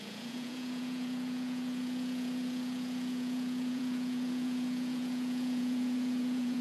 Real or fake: fake